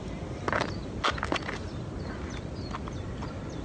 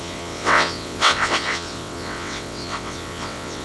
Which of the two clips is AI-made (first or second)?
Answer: second